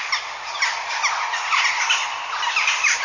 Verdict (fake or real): real